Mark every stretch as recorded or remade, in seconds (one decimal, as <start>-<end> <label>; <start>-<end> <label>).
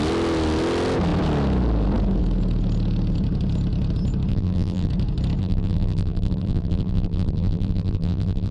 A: 0.0-4.3 recorded; 4.3-4.9 remade; 4.9-5.4 recorded; 5.4-8.5 remade